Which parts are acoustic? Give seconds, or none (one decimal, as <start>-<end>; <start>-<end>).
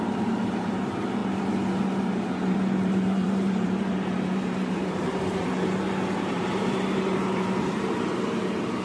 none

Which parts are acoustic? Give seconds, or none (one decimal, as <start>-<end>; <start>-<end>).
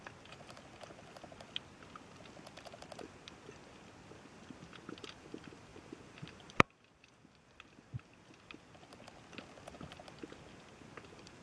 0.0-5.7; 7.6-11.4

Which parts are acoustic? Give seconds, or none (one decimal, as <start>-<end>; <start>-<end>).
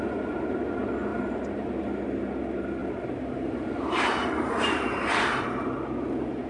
0.0-1.1; 1.8-2.8; 5.7-6.5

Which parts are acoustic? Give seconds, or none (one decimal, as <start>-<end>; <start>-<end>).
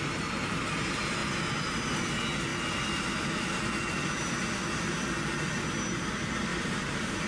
0.0-6.5